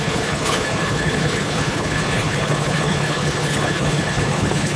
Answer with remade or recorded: remade